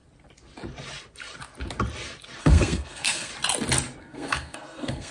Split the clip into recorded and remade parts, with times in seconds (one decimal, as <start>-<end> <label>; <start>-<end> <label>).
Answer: 0.0-2.4 recorded; 2.4-3.3 remade; 3.3-4.0 recorded; 4.0-5.1 remade